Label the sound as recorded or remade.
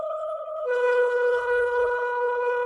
remade